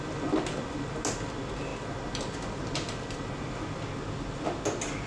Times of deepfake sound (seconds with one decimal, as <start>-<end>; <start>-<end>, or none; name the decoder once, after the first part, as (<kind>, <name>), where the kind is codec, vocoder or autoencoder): none